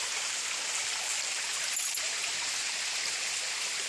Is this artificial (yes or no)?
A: no